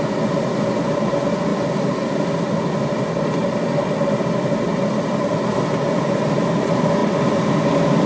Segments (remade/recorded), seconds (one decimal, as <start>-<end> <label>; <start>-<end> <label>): 0.0-8.1 recorded